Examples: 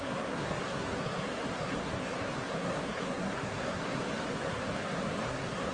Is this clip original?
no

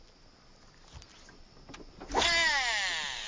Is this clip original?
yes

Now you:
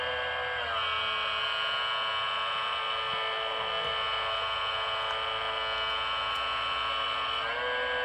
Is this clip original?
yes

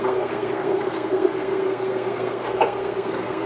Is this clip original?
no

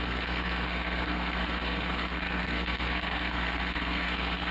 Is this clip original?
no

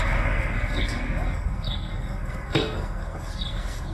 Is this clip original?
no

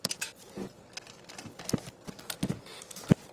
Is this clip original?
yes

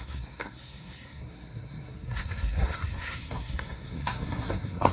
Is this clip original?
no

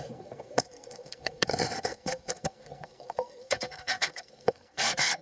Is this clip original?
no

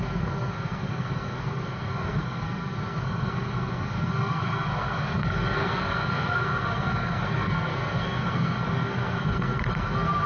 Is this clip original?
no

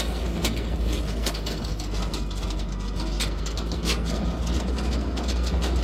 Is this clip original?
no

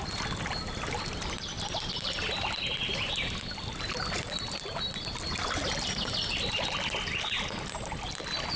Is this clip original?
yes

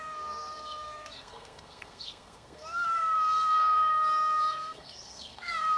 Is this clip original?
no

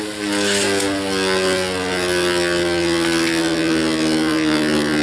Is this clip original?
yes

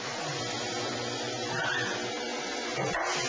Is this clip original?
yes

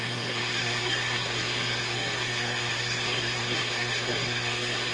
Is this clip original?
no